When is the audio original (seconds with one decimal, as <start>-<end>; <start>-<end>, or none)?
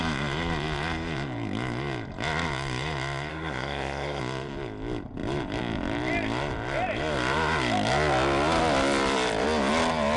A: 0.0-3.3; 4.2-10.2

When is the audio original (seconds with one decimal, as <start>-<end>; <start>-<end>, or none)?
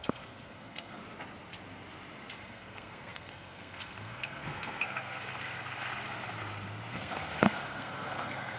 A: 1.0-2.3; 5.9-6.9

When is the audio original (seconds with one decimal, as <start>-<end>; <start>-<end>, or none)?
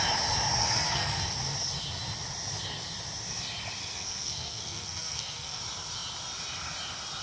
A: 0.0-0.6; 1.2-3.8; 5.6-7.2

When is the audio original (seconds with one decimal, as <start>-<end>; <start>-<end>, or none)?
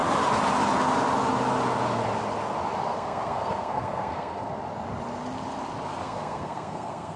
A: 0.0-2.9; 4.5-6.0